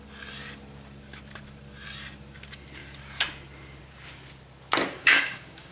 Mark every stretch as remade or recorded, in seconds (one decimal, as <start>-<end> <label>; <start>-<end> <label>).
0.0-5.0 recorded; 5.0-5.7 remade